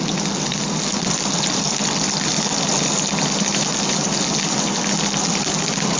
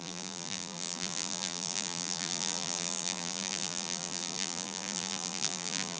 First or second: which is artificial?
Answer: second